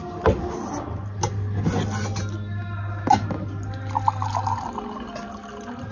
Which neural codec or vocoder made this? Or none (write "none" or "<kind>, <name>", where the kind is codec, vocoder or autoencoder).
none